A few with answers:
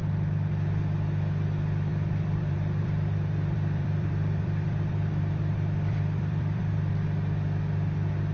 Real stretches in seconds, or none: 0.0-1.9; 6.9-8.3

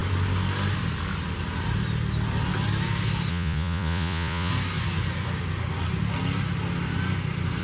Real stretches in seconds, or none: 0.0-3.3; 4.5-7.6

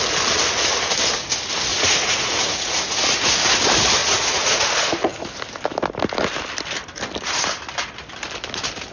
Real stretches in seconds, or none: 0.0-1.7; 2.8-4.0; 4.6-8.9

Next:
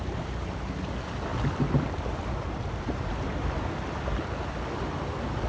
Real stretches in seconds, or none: 0.0-5.5